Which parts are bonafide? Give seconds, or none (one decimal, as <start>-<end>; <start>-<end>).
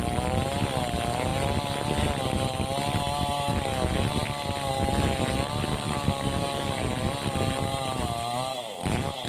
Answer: 0.0-5.7; 6.8-9.3